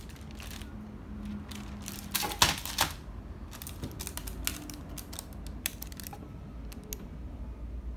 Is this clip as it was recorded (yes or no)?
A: yes